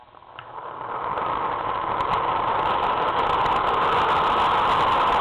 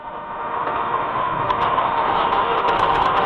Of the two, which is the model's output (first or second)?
second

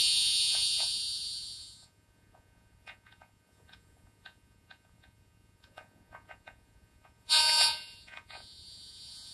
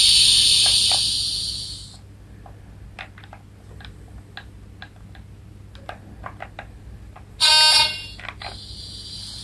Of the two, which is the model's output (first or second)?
first